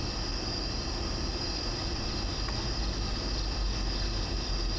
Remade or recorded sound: recorded